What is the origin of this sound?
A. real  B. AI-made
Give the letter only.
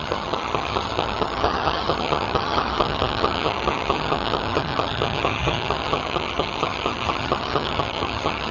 B